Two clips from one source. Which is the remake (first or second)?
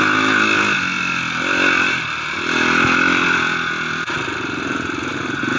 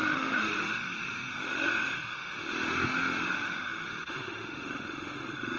second